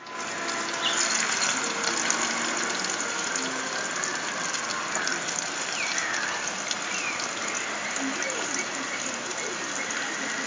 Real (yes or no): yes